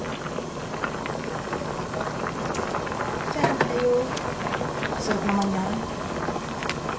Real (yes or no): yes